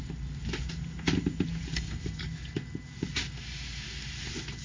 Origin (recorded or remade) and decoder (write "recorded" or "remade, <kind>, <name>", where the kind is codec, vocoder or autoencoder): recorded